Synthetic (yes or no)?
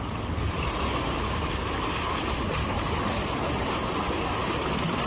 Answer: no